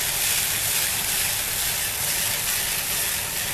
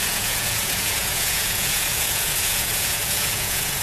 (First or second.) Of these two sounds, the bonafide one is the first